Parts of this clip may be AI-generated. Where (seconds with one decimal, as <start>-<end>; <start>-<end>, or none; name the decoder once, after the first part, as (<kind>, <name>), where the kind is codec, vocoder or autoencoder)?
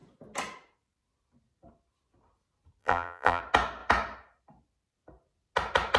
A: 2.8-3.4 (vocoder, BigVGAN v2)